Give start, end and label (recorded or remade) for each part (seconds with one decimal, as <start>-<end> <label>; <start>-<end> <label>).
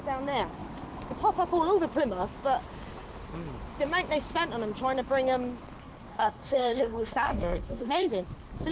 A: 0.0-5.8 recorded; 5.8-8.1 remade; 8.1-8.7 recorded